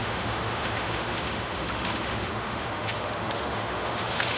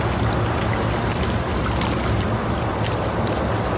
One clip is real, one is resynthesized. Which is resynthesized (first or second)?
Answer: first